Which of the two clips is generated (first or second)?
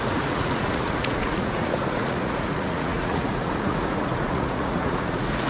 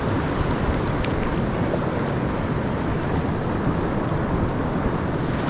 first